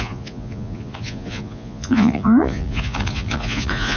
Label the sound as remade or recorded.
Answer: remade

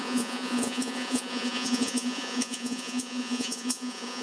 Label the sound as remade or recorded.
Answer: remade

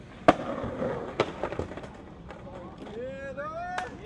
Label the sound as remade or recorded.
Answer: recorded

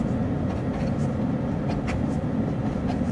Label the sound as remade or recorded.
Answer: recorded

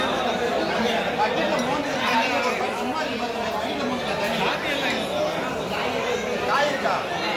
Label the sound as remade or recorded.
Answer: recorded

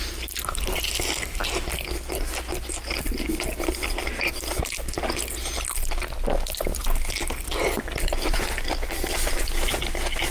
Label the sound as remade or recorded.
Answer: recorded